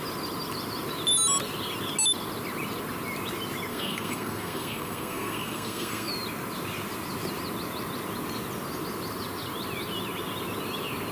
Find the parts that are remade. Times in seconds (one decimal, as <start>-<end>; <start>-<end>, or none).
3.7-6.1

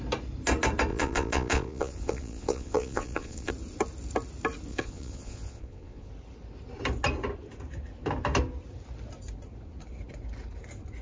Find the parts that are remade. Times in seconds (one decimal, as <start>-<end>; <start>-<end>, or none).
0.9-3.5; 4.7-6.1

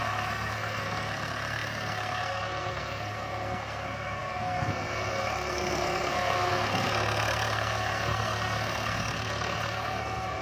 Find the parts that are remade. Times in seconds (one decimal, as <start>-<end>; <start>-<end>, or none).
0.0-10.4

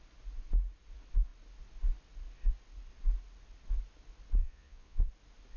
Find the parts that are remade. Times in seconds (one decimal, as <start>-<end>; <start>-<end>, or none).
4.4-5.1

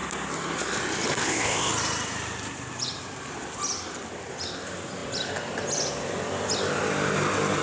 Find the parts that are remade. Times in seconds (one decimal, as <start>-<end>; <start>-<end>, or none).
1.2-1.7

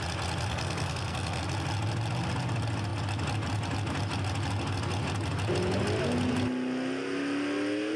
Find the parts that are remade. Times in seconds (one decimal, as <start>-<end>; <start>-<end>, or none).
0.5-1.4

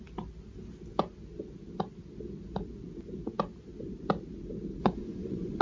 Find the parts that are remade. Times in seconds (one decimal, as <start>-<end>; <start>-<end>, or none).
4.8-5.6

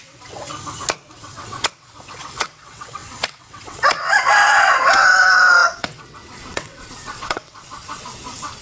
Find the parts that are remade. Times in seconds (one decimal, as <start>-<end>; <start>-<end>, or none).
0.0-0.5; 1.1-8.6